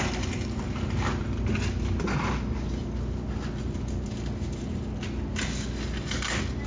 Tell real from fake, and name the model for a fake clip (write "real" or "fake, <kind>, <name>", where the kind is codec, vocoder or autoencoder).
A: real